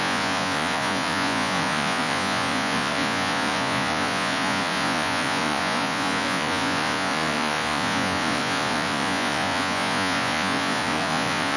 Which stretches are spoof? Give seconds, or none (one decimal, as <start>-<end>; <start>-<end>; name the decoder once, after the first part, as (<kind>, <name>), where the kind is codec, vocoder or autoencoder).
0.0-11.6 (vocoder, Vocos)